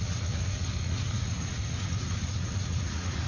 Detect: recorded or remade remade